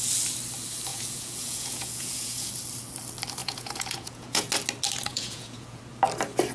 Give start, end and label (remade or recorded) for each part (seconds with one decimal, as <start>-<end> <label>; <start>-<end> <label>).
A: 0.0-0.9 recorded; 0.9-2.5 remade; 2.5-3.4 recorded; 3.4-4.5 remade; 4.5-5.1 recorded; 5.1-5.8 remade; 5.8-6.5 recorded